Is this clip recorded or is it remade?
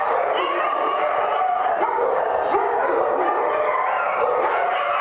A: recorded